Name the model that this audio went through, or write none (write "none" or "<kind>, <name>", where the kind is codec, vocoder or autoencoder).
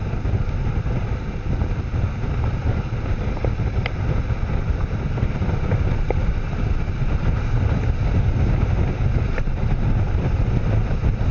none